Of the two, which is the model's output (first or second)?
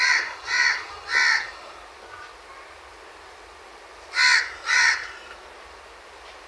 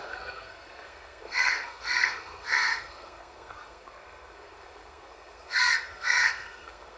second